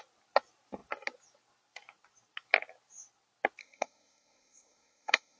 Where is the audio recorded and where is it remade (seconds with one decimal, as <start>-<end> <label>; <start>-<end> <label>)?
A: 0.0-3.6 recorded; 3.6-5.4 remade